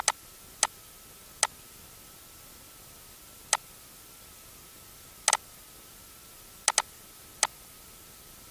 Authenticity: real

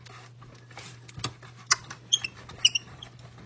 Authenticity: real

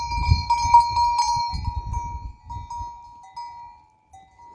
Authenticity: real